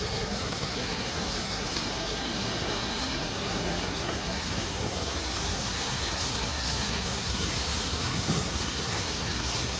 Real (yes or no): no